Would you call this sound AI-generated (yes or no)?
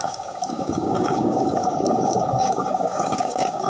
yes